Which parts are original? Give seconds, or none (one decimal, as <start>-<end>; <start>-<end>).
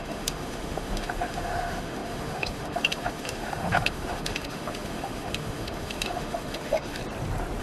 7.0-7.6